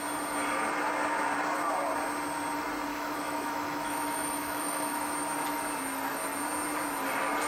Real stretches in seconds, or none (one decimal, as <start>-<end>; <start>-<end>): 0.0-2.9; 5.0-7.5